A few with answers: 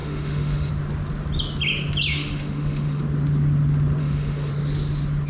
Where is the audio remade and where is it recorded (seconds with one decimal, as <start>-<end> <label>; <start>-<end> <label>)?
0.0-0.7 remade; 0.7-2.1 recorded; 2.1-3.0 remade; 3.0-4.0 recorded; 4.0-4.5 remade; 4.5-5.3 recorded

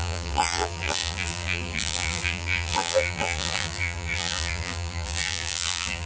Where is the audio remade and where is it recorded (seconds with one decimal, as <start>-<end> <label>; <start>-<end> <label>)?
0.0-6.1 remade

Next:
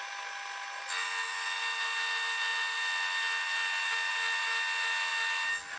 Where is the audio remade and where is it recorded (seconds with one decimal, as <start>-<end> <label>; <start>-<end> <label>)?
0.0-5.8 recorded

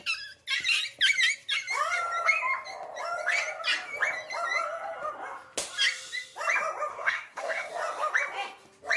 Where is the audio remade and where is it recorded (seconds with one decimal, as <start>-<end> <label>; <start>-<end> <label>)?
0.0-6.9 recorded; 6.9-7.7 remade; 7.7-9.0 recorded